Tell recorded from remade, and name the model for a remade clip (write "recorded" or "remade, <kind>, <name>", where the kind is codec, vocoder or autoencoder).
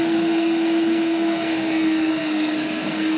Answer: remade, codec, SNAC